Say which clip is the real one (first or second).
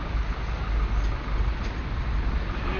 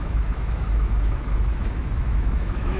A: first